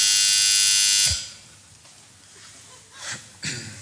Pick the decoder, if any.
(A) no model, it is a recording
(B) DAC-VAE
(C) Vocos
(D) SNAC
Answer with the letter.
A